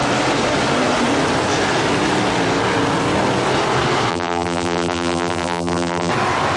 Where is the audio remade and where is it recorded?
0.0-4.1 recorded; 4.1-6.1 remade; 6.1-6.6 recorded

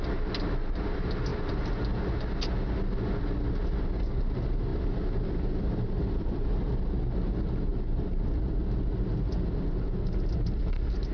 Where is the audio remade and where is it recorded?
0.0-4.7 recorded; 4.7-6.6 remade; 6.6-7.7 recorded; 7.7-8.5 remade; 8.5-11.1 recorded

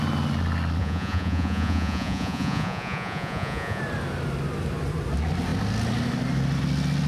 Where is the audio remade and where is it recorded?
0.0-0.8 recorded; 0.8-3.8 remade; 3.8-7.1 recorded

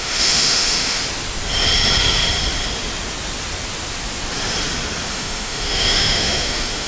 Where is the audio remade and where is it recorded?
0.0-1.0 remade; 1.0-5.1 recorded; 5.1-6.9 remade